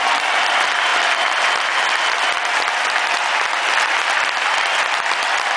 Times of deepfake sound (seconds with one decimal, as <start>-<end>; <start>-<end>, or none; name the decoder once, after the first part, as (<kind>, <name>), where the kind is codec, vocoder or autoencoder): none